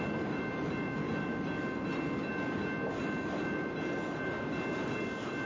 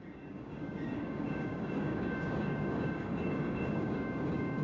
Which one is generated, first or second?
second